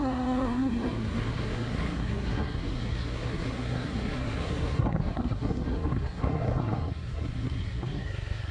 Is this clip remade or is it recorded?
remade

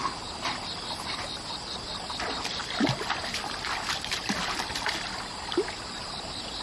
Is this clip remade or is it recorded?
recorded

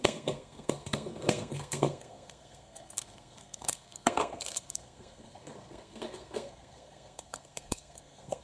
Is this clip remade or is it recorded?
remade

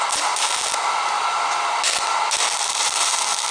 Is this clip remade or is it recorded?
recorded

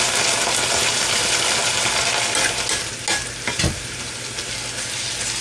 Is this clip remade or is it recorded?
recorded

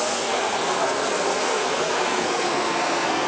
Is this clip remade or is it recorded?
remade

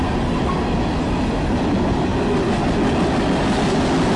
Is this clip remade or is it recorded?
recorded